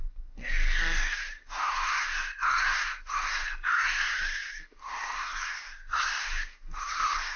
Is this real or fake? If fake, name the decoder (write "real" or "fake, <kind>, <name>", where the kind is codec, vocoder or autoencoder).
fake, codec, SNAC